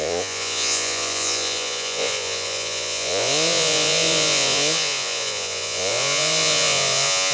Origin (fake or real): fake